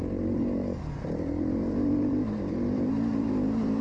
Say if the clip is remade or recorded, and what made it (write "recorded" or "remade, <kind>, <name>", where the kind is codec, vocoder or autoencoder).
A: remade, vocoder, BigVGAN v2